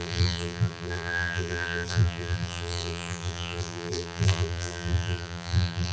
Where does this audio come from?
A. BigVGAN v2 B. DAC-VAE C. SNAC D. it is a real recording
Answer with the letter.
A